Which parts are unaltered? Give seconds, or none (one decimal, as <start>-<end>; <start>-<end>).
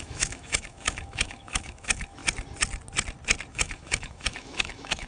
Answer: 2.2-3.5